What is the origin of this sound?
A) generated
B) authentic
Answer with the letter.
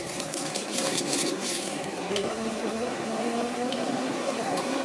A